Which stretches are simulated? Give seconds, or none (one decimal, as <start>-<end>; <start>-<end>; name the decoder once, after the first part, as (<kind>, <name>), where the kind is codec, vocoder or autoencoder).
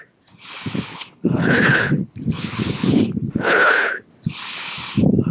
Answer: 0.9-4.1 (codec, HILCodec)